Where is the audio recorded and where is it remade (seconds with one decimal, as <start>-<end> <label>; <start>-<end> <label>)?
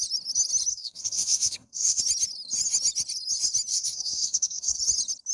0.0-0.7 recorded; 0.7-2.0 remade; 2.0-3.7 recorded; 3.7-4.8 remade; 4.8-5.3 recorded